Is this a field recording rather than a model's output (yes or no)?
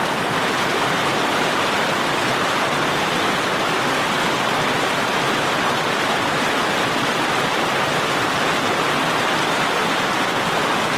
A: yes